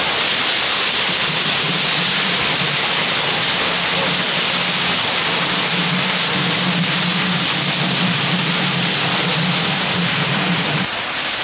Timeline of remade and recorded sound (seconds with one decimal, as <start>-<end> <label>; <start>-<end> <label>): 0.0-3.0 remade; 3.0-7.4 recorded; 7.4-11.4 remade